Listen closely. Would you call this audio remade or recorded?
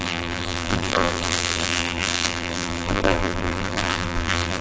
remade